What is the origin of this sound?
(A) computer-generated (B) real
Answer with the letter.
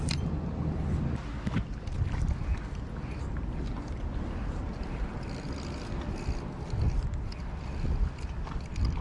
B